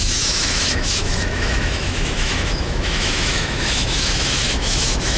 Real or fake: fake